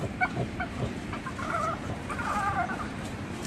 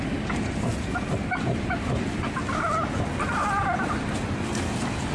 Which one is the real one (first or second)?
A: second